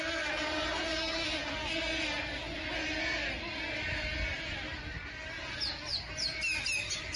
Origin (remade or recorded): recorded